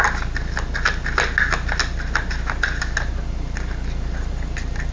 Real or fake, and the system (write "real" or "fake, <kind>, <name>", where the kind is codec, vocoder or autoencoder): real